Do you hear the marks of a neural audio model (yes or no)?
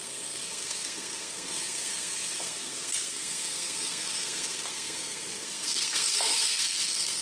yes